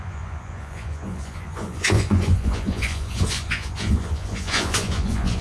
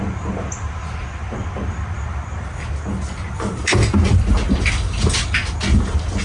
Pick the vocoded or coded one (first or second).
first